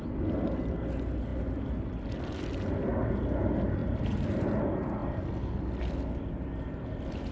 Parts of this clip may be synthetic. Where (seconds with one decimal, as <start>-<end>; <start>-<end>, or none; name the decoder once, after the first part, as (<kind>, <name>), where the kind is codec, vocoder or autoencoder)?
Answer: 3.8-4.6 (vocoder, BigVGAN v2)